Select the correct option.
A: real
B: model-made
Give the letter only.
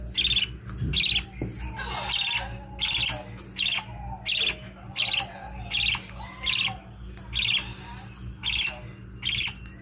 A